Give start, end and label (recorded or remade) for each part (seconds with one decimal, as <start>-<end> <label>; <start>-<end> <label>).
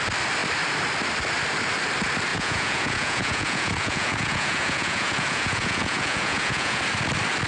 0.0-2.3 recorded; 2.3-6.8 remade; 6.8-7.5 recorded